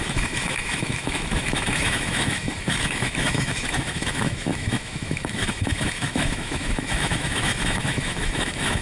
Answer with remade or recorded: remade